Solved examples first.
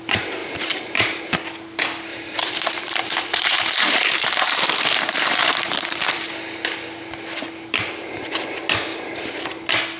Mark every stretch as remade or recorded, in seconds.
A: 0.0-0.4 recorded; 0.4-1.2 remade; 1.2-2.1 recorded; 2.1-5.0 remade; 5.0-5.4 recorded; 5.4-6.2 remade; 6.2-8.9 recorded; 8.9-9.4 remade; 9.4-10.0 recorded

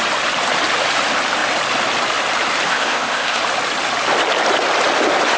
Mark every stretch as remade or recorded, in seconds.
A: 0.0-2.7 recorded; 2.7-3.4 remade; 3.4-5.4 recorded

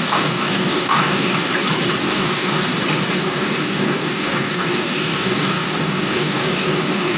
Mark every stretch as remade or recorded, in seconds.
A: 0.0-1.5 remade; 1.5-2.0 recorded; 2.0-2.7 remade; 2.7-3.2 recorded; 3.2-7.2 remade

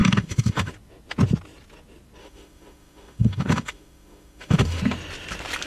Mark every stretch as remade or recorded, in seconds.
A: 0.0-0.7 remade; 0.7-2.2 recorded; 2.2-4.8 remade; 4.8-5.7 recorded

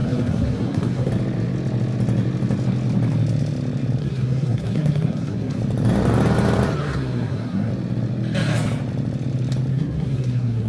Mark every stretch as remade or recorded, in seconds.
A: 0.0-1.1 remade; 1.1-4.0 recorded; 4.0-5.6 remade; 5.6-6.8 recorded; 6.8-7.7 remade; 7.7-9.7 recorded; 9.7-10.7 remade

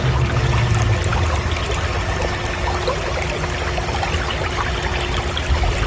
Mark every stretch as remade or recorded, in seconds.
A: 0.0-5.9 recorded

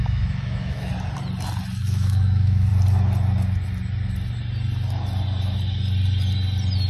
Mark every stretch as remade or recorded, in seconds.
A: 0.0-0.9 remade; 0.9-1.8 recorded; 1.8-2.7 remade; 2.7-6.9 recorded